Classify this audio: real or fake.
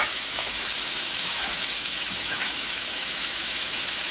fake